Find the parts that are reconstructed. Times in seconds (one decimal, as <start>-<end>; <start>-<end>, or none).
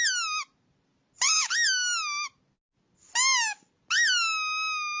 none